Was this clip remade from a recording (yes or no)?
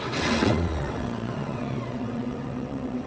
yes